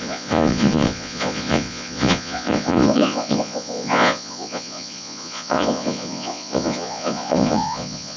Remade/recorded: remade